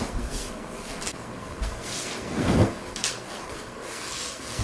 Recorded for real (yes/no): no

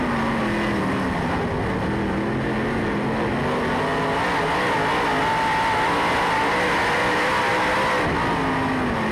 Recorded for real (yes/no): yes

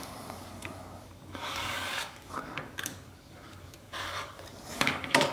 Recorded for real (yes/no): no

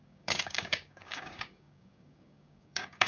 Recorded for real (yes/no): no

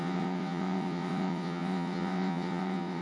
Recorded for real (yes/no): no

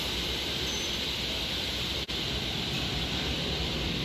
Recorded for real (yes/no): no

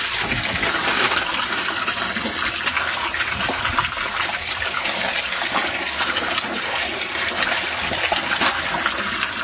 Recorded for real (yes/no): yes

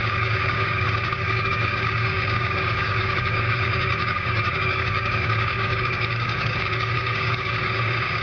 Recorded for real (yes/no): no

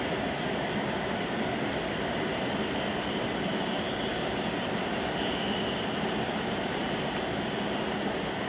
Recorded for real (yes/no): yes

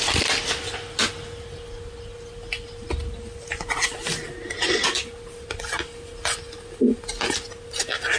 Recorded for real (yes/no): yes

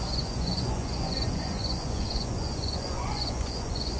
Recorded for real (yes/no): no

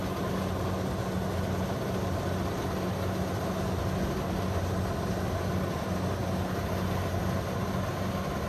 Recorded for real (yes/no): yes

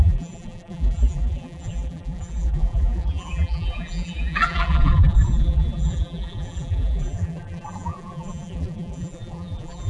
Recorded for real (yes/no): no